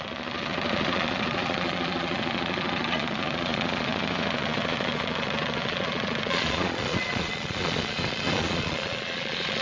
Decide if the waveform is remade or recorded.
remade